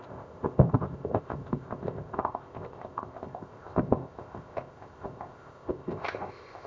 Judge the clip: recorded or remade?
remade